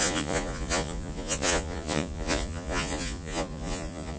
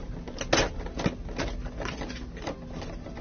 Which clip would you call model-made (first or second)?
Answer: first